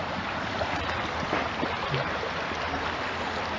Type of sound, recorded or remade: recorded